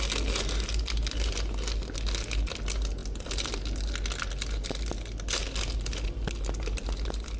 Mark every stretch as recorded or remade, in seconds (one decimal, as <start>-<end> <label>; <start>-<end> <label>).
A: 0.0-7.4 recorded